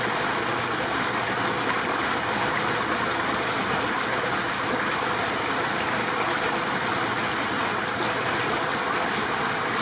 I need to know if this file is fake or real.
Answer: real